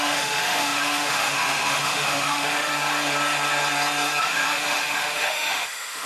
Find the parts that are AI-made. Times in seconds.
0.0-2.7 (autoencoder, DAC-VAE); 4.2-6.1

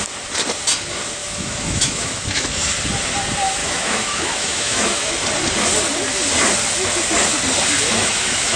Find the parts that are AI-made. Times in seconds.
1.2-2.7 (autoencoder, DAC-VAE); 3.6-5.1; 8.0-8.6

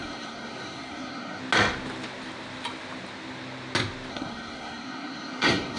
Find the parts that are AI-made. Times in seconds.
0.0-1.4 (codec, SNAC); 4.1-5.8

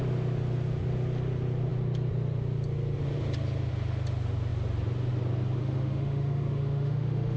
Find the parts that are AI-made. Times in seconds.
5.6-7.4 (autoencoder, DAC-VAE)

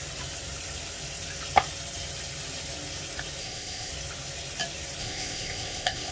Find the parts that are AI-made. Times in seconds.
3.4-3.9 (codec, ZipCodec); 5.0-6.1

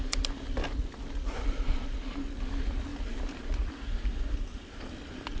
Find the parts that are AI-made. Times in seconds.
none

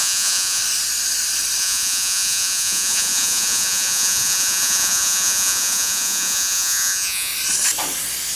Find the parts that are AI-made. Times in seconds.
0.0-0.6 (vocoder, Vocos); 1.6-7.3

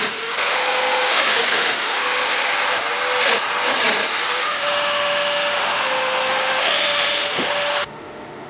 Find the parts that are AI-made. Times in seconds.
0.0-2.5 (autoencoder, DAC-VAE); 4.4-8.5